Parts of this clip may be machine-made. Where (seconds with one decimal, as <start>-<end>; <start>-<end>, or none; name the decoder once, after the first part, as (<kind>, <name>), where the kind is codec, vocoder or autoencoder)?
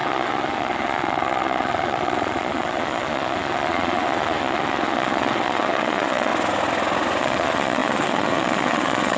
0.0-6.3 (vocoder, Vocos); 7.2-9.2